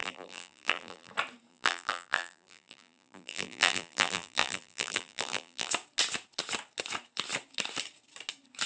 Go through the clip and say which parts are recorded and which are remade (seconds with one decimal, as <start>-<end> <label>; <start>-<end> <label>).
0.0-1.1 remade; 1.1-1.5 recorded; 1.5-5.7 remade; 5.7-8.7 recorded